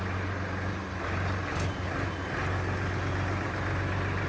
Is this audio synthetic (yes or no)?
no